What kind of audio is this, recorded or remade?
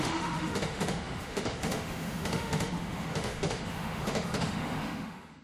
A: remade